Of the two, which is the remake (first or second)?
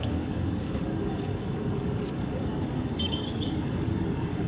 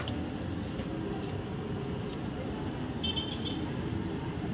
first